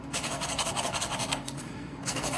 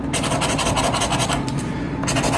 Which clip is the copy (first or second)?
first